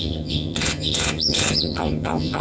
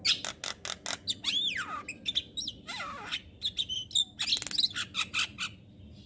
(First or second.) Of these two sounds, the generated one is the first